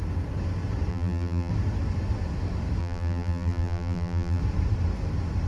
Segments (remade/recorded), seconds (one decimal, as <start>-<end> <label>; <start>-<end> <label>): 0.0-0.9 recorded; 0.9-1.5 remade; 1.5-2.8 recorded; 2.8-4.4 remade; 4.4-5.5 recorded